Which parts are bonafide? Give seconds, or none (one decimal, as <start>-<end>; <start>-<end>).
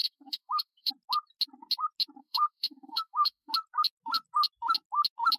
0.9-2.2; 3.5-5.4